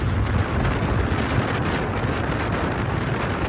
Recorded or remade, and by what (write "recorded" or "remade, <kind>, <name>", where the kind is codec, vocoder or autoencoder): recorded